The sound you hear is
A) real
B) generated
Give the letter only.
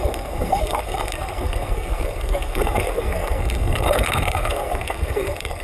B